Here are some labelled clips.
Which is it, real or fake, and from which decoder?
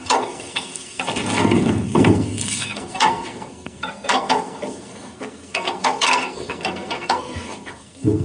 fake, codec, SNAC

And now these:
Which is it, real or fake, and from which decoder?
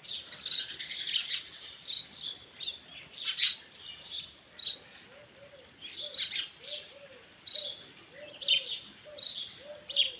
real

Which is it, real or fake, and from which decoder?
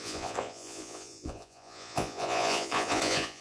fake, vocoder, Vocos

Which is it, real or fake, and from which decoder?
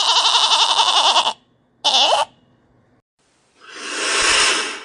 real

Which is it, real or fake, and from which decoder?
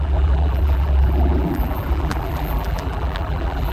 fake, vocoder, BigVGAN v2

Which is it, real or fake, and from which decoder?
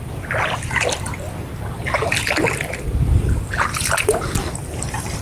real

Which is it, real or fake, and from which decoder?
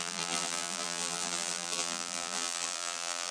fake, vocoder, BigVGAN v2